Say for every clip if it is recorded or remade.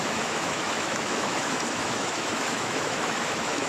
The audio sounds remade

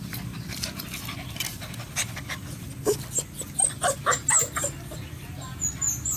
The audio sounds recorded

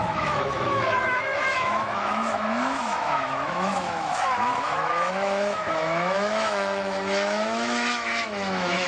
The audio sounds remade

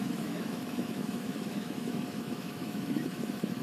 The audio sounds remade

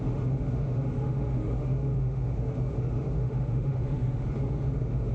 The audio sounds remade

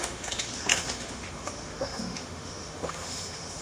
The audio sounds remade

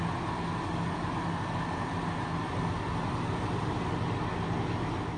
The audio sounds recorded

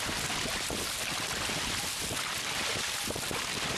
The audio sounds recorded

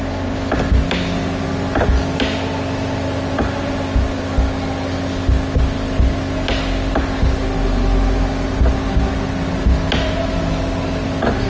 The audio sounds recorded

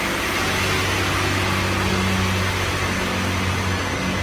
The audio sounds recorded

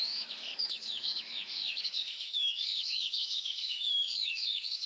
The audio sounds remade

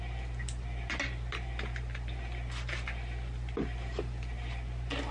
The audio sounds recorded